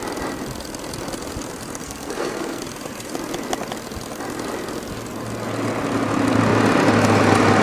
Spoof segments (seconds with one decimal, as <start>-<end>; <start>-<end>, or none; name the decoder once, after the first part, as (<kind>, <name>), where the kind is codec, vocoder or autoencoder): 1.8-2.6 (codec, SNAC)

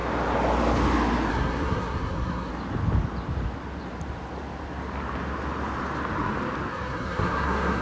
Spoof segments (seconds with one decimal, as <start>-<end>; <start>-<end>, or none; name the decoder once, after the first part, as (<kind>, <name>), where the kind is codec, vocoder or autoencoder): 1.3-2.5 (codec, SNAC); 6.7-7.8